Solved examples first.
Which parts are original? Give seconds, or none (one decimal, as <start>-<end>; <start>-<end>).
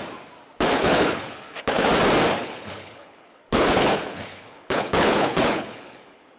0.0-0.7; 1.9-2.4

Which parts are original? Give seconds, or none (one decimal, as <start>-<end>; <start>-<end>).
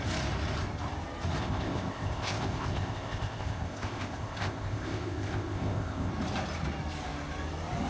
0.0-1.4; 6.1-7.9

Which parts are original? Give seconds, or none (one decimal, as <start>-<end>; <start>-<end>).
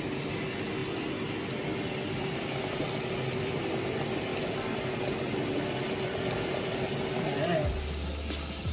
0.0-0.8; 3.8-4.3; 6.9-8.7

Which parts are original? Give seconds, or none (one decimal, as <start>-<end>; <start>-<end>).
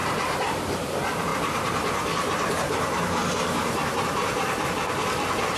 0.9-1.3; 4.7-5.6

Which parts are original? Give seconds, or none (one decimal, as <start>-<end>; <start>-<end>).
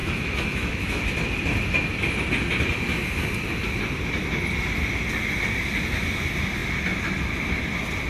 1.0-8.1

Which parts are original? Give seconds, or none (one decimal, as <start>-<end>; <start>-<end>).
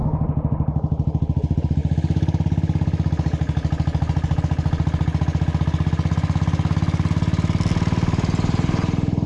0.0-9.3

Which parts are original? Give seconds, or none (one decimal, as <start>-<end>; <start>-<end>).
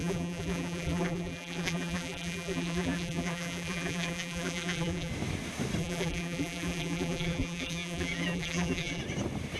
5.1-5.8; 9.0-9.6